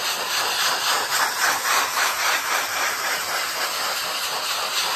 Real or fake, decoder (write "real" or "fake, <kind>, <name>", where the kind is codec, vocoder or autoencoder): real